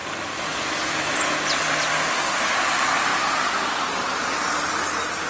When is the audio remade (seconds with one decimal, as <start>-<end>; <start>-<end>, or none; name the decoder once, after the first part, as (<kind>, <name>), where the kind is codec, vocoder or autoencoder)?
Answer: none